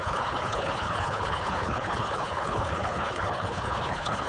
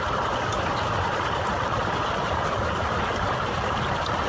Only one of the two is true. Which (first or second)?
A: second